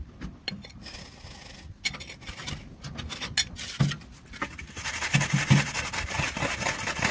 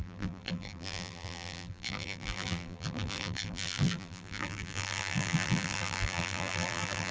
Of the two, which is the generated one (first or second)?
second